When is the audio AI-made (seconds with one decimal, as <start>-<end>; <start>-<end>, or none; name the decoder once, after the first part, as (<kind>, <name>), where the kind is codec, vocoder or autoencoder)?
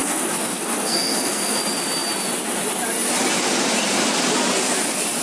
0.0-1.6 (codec, SNAC)